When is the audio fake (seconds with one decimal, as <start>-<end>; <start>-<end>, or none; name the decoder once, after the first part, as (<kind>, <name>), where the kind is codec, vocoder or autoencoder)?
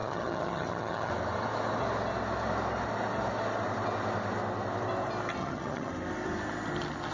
0.0-1.1 (vocoder, HiFi-GAN); 5.4-5.9